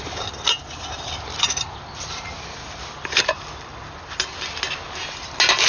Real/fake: real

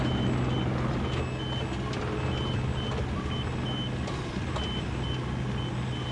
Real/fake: real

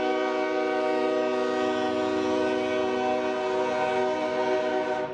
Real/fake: real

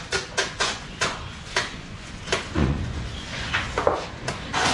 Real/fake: fake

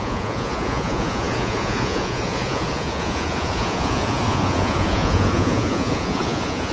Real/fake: fake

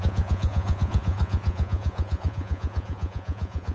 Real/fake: fake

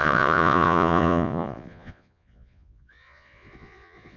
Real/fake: fake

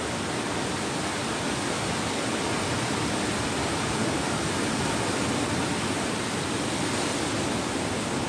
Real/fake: real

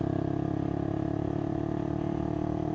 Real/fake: real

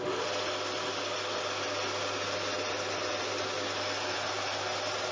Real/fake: real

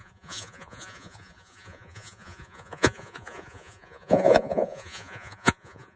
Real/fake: fake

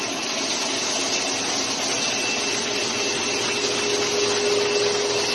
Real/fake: real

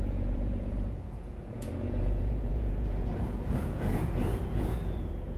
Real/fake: fake